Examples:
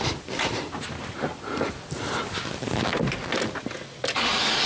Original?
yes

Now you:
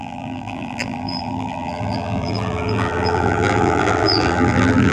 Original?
no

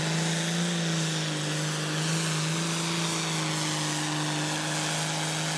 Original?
yes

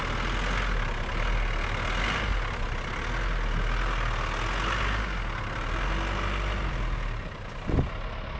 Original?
yes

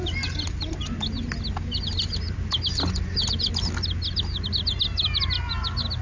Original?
yes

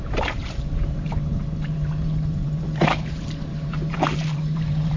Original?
no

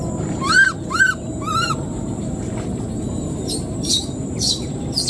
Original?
no